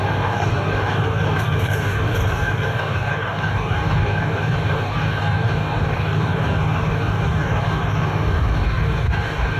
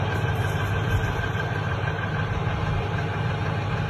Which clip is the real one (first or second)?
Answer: second